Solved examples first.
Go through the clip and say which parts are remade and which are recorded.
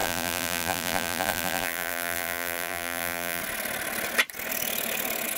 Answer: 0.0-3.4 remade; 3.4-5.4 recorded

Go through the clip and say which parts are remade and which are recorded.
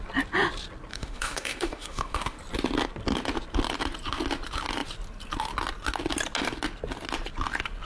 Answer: 0.0-0.9 recorded; 0.9-2.4 remade; 2.4-7.9 recorded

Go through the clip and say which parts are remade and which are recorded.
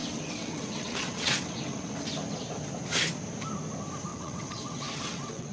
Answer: 0.0-1.9 remade; 1.9-4.1 recorded; 4.1-5.5 remade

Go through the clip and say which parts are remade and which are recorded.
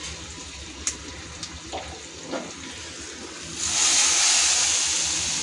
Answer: 0.0-1.1 remade; 1.1-4.3 recorded; 4.3-5.4 remade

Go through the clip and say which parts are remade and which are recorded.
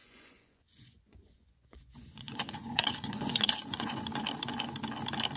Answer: 0.0-4.1 remade; 4.1-5.4 recorded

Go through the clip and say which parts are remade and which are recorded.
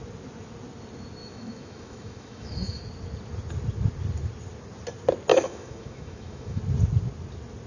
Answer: 0.0-1.2 recorded; 1.2-2.8 remade; 2.8-5.3 recorded; 5.3-6.6 remade; 6.6-7.7 recorded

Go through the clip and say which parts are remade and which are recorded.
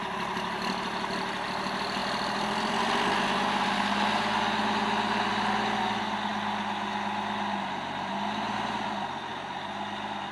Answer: 0.0-10.3 recorded